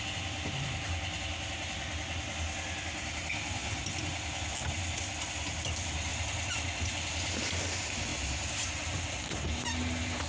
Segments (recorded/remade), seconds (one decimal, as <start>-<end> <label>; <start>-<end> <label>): 0.0-10.3 recorded